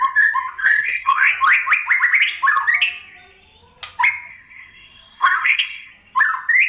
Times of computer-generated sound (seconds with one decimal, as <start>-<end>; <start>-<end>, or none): 0.6-1.3; 4.3-5.9